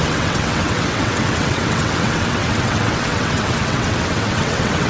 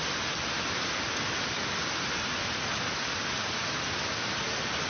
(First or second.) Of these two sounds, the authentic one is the second